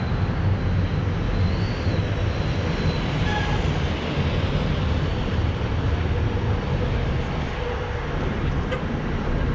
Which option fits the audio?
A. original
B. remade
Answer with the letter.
A